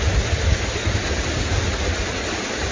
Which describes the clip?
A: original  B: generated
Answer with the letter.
A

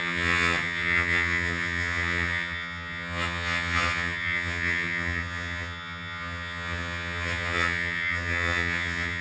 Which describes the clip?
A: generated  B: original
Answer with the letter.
A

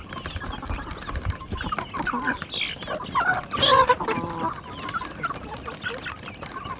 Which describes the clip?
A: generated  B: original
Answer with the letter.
B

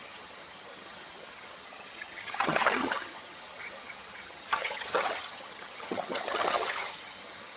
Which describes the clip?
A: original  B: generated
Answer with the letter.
B